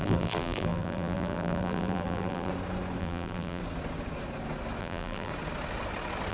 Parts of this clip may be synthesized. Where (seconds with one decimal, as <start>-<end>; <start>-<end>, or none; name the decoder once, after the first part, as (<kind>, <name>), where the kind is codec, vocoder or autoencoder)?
0.0-2.5 (vocoder, BigVGAN v2); 3.0-3.6; 4.8-5.3